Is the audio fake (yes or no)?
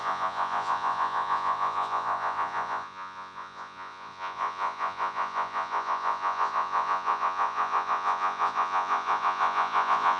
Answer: yes